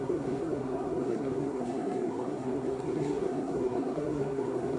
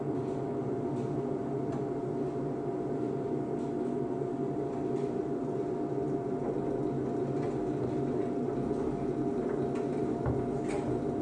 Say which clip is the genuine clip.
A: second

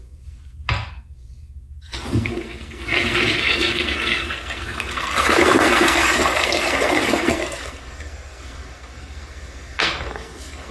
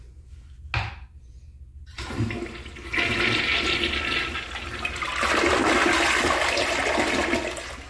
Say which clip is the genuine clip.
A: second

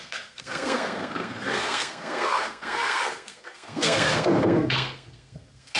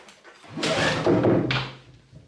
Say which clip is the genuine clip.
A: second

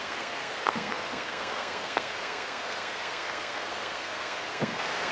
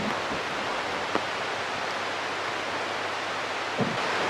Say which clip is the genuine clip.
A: second